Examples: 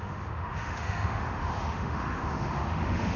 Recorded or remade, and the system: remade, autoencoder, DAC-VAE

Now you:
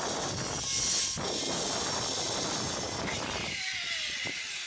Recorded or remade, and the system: recorded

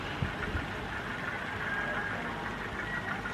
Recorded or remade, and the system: recorded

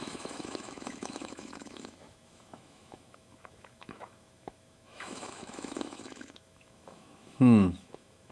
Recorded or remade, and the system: remade, autoencoder, DAC-VAE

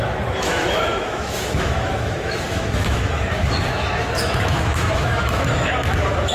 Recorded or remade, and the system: remade, autoencoder, DAC-VAE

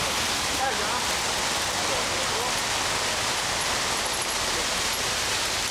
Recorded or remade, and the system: recorded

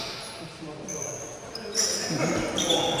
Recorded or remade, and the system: recorded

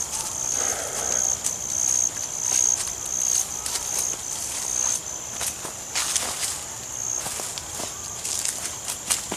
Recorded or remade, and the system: recorded